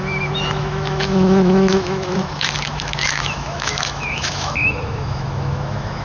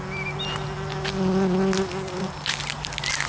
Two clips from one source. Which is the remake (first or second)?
first